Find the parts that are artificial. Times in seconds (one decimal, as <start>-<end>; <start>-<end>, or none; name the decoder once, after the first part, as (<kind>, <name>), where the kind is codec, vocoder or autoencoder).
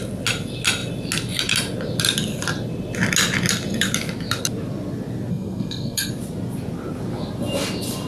5.3-6.1 (codec, SNAC)